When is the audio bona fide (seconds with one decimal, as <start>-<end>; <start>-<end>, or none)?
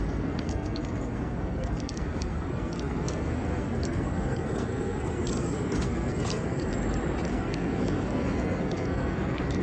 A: 6.7-7.3